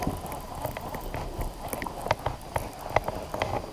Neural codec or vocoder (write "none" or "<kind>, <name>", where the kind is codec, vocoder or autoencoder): none